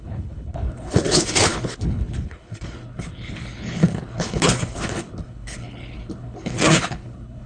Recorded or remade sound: remade